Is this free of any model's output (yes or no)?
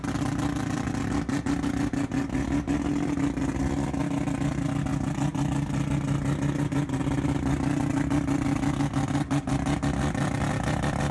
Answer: yes